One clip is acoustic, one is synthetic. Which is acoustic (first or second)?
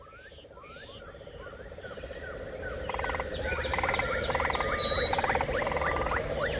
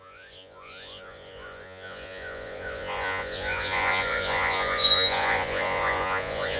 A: first